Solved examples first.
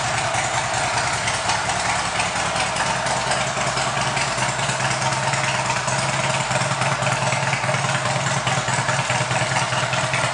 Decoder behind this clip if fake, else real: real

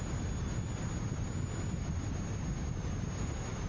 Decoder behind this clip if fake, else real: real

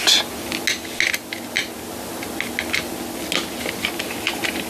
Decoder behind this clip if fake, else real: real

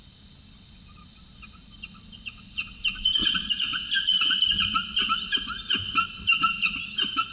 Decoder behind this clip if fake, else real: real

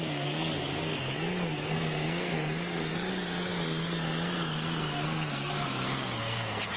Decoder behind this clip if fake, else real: fake, codec, SNAC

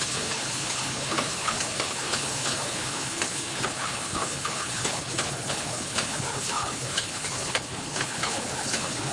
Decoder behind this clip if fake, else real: fake, codec, HILCodec